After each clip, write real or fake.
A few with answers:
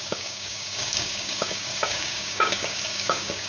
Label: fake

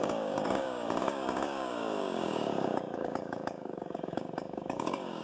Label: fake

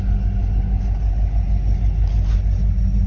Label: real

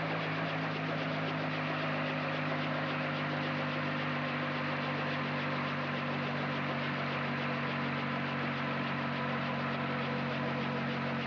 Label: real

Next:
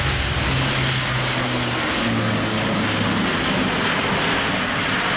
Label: real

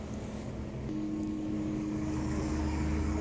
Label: fake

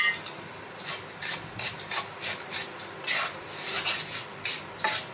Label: real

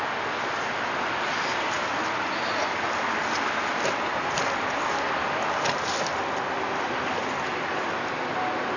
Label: real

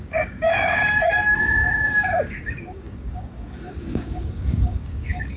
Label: fake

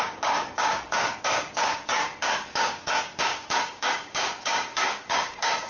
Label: fake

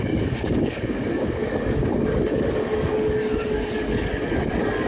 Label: fake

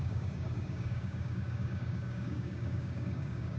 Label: fake